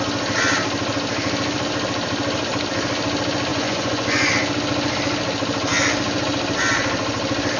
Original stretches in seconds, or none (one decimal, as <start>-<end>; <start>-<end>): 0.0-3.5; 4.3-7.6